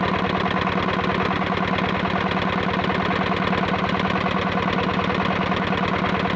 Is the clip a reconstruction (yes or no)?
no